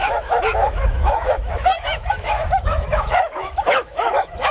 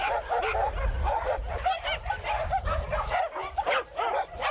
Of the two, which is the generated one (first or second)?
first